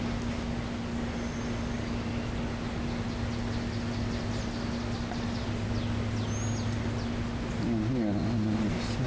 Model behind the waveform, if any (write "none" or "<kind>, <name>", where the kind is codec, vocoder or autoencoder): none